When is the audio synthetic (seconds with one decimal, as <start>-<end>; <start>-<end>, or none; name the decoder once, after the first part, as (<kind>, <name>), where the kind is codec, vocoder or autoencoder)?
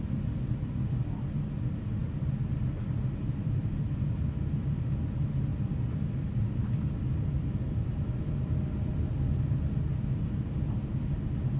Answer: none